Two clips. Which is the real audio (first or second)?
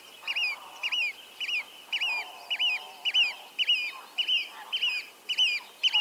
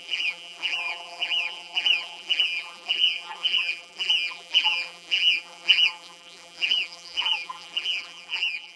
first